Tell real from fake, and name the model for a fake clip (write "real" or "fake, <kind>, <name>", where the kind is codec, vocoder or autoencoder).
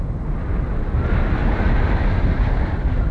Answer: real